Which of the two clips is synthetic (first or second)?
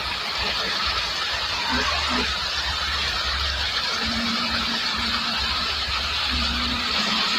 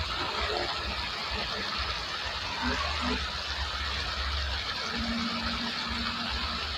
first